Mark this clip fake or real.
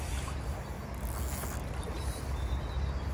real